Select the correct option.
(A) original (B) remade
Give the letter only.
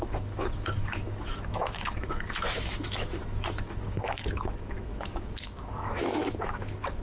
B